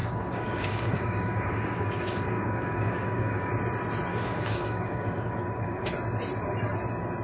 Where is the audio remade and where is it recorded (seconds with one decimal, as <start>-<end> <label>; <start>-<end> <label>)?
0.0-3.5 remade; 3.5-4.1 recorded; 4.1-5.9 remade; 5.9-7.2 recorded